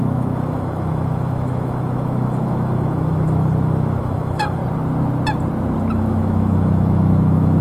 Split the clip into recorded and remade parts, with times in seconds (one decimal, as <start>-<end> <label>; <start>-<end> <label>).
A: 0.0-4.6 remade; 4.6-5.9 recorded; 5.9-7.6 remade